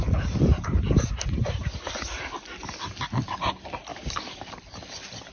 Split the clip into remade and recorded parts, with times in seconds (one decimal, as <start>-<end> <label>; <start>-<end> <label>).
0.0-3.9 recorded; 3.9-4.5 remade; 4.5-5.3 recorded